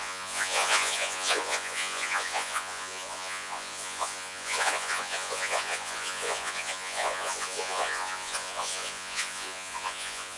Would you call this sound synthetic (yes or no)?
yes